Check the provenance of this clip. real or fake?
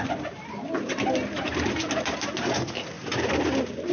real